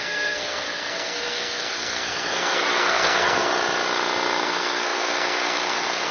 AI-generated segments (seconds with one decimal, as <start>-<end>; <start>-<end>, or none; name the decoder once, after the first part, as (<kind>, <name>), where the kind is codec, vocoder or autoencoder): 0.0-3.5 (codec, SNAC); 4.4-6.1